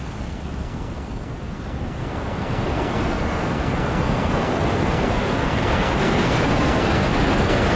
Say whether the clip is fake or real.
fake